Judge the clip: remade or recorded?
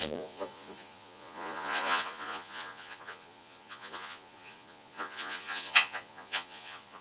remade